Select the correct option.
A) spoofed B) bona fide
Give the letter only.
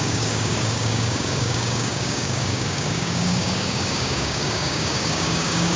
A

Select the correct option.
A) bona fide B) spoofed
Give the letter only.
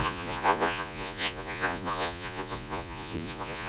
B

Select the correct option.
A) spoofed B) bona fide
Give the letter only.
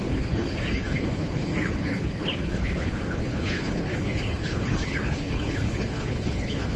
A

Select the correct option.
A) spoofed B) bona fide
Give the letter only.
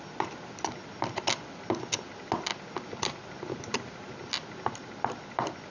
B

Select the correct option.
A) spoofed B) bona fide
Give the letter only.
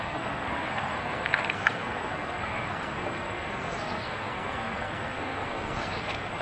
A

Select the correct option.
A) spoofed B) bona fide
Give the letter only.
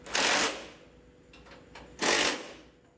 B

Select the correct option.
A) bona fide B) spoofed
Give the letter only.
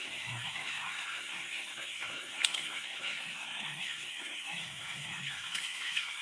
B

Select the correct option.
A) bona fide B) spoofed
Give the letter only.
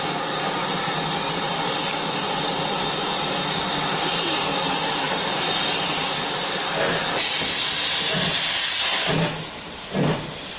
A